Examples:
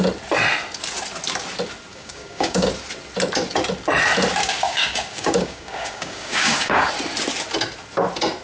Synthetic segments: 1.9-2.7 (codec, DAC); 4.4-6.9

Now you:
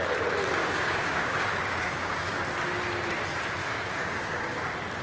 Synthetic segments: 0.6-2.4 (codec, DAC); 3.6-4.6

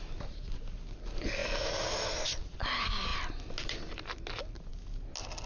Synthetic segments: none

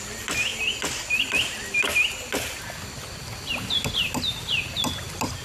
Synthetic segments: none

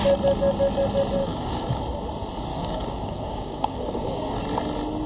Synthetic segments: 1.2-1.8 (codec, DAC); 2.5-4.4

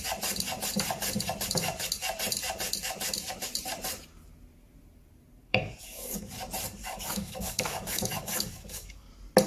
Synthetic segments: 5.5-6.2 (codec, DAC); 6.8-9.1

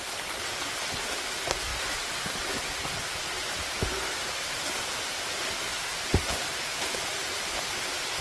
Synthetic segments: none

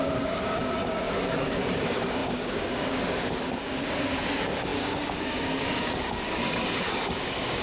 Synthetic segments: 0.0-7.6 (codec, DAC)